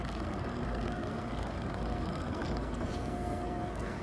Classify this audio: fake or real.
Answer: fake